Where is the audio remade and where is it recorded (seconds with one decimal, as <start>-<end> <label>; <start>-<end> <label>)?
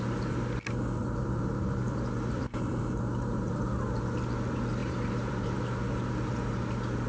0.0-1.0 recorded; 1.0-3.6 remade; 3.6-4.8 recorded; 4.8-5.6 remade; 5.6-7.1 recorded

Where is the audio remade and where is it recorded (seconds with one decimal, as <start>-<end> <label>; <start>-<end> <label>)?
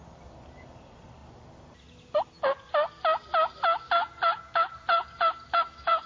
0.0-1.2 remade; 1.2-3.9 recorded; 3.9-6.1 remade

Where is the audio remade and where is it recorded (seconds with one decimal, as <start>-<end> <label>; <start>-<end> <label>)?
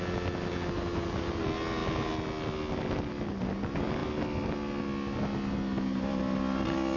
0.0-7.0 recorded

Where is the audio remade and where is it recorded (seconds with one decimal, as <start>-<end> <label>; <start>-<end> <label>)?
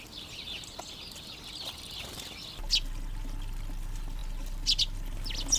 0.0-5.6 recorded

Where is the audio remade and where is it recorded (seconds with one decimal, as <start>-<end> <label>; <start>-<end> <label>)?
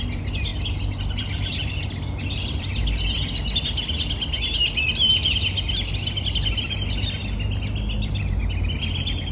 0.0-0.5 recorded; 0.5-3.2 remade; 3.2-9.3 recorded